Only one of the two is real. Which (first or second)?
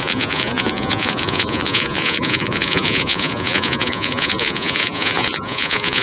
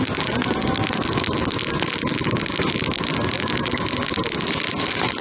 second